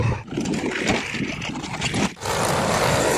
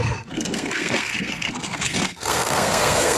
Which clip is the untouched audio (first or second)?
first